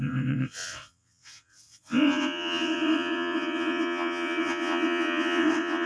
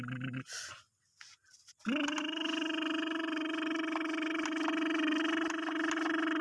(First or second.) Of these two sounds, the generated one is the first